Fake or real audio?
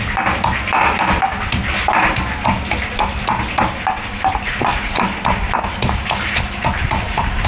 real